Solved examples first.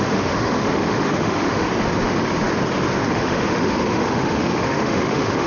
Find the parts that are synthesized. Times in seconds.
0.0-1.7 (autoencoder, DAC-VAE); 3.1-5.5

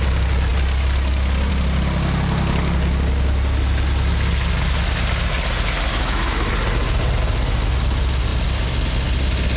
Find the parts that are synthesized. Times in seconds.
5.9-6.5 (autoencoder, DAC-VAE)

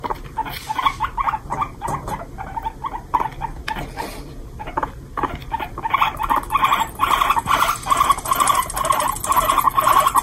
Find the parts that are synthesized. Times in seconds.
none

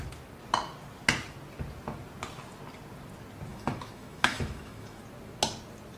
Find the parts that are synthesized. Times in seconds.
3.5-5.0 (autoencoder, DAC-VAE)

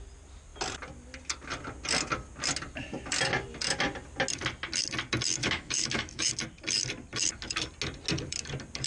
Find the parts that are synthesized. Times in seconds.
5.4-6.3 (autoencoder, DAC-VAE)

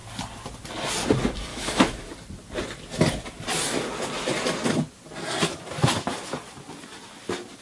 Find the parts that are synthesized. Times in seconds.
1.5-2.1 (autoencoder, DAC-VAE)

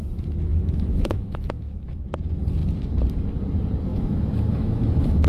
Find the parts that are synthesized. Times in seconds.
0.5-2.0 (autoencoder, DAC-VAE); 3.9-5.3